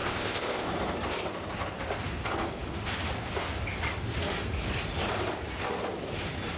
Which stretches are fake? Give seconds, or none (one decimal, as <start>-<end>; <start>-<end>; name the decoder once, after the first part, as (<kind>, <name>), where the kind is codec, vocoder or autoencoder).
0.0-0.7 (codec, ZipCodec)